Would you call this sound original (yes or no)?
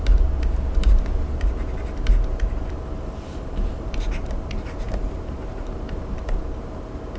no